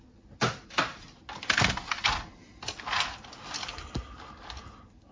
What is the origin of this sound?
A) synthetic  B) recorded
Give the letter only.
B